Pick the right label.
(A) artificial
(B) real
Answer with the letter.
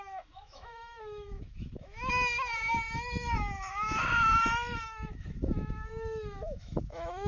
A